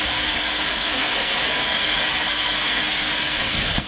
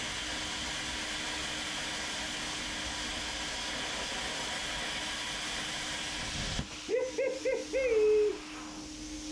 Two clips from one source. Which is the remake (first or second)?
first